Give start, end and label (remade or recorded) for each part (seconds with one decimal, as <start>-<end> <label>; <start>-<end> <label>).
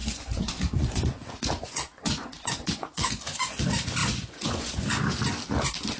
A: 0.0-3.6 remade; 3.6-4.0 recorded; 4.0-5.1 remade; 5.1-6.0 recorded